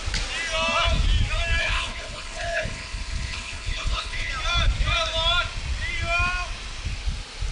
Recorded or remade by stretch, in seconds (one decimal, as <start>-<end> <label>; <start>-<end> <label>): 0.0-1.6 recorded; 1.6-4.3 remade; 4.3-7.5 recorded

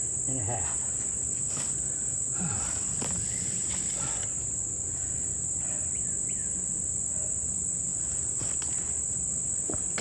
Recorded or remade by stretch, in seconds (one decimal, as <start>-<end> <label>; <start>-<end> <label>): 0.0-10.0 recorded

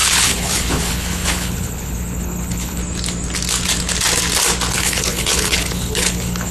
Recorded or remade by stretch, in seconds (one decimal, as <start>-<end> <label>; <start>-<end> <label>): 0.0-2.8 remade; 2.8-4.7 recorded; 4.7-6.5 remade